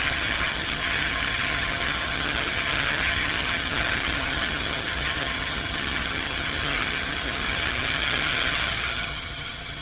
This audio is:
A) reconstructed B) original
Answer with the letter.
A